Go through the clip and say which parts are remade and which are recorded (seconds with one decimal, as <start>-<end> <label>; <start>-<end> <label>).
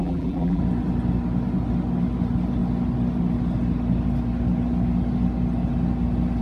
0.0-0.6 remade; 0.6-6.4 recorded